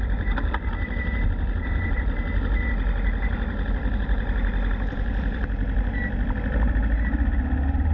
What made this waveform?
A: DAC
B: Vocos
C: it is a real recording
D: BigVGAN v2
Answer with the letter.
C